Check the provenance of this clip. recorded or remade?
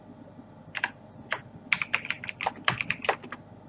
recorded